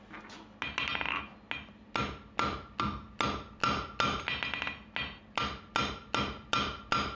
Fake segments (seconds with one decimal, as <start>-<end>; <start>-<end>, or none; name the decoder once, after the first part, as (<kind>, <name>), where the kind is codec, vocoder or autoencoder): none

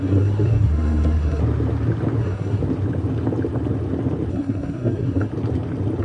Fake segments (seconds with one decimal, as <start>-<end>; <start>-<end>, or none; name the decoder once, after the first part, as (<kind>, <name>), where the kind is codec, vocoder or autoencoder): 0.0-1.4 (codec, SNAC); 2.2-2.6; 4.3-5.3

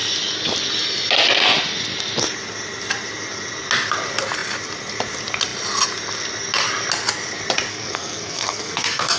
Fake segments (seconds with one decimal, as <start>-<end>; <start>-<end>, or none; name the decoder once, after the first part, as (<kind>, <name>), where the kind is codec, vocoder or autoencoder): 7.7-9.2 (codec, SNAC)

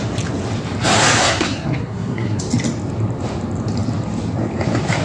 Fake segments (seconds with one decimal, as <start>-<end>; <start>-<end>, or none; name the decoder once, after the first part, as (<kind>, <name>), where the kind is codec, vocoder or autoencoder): 1.2-2.4 (codec, SNAC)

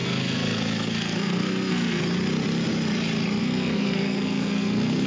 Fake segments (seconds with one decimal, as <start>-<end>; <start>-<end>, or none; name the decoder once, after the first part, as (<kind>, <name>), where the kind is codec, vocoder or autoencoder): 0.0-2.0 (codec, SNAC); 3.4-5.1